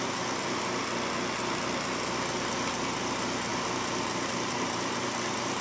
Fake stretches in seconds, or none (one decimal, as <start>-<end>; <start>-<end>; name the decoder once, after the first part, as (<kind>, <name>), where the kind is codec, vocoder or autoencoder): none